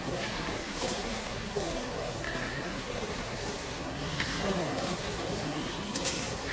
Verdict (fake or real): fake